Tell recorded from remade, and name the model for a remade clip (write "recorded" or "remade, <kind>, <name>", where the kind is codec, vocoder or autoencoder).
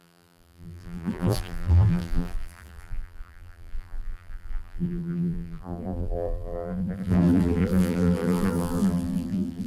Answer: remade, vocoder, BigVGAN v2